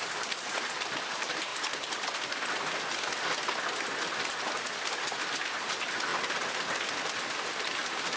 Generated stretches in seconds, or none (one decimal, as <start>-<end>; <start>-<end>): none